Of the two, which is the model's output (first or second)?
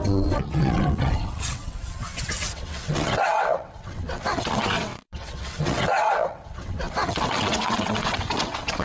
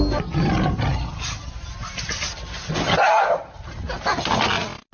first